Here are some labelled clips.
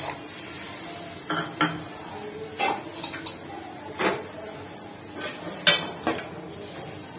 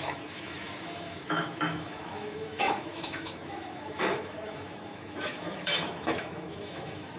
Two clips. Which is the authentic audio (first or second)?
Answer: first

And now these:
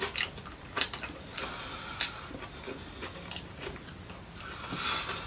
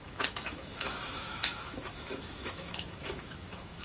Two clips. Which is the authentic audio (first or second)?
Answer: first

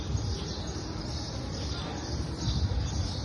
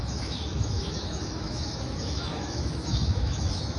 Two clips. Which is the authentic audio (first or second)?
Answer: first